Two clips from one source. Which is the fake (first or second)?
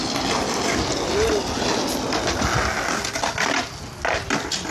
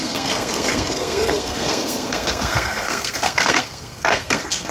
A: second